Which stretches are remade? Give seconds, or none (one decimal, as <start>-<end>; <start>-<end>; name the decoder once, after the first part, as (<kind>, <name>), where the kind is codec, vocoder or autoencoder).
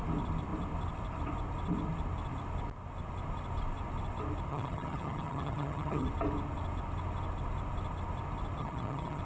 4.5-6.1 (vocoder, HiFi-GAN); 8.6-9.2